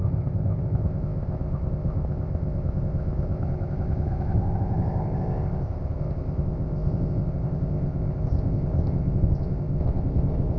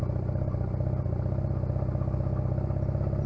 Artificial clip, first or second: first